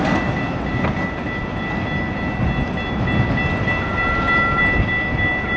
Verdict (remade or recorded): recorded